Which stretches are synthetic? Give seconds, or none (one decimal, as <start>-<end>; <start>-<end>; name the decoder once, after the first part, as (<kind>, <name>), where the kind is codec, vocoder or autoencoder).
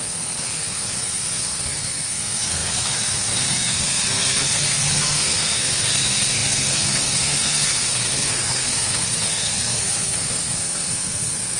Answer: 0.0-11.6 (codec, SNAC)